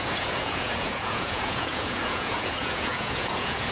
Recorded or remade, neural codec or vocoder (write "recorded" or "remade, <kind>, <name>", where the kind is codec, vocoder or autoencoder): remade, vocoder, Vocos